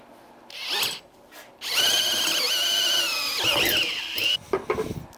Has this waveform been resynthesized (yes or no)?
no